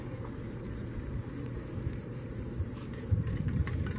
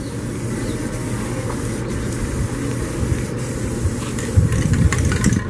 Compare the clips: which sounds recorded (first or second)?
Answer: second